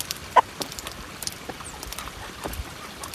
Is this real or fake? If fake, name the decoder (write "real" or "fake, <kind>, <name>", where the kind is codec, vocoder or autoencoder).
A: fake, vocoder, BigVGAN v2